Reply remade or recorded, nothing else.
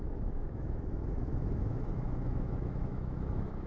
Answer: remade